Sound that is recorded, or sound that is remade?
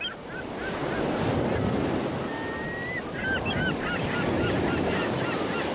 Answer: recorded